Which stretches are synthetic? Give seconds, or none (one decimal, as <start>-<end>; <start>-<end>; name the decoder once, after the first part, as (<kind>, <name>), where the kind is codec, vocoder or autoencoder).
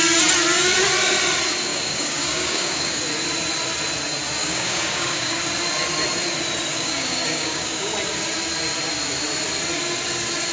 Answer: 1.7-3.0 (codec, DAC); 4.4-5.4; 6.7-7.9